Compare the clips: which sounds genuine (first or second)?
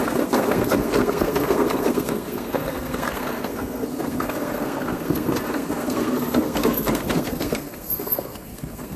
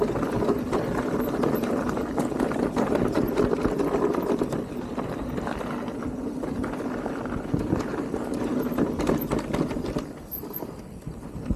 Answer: second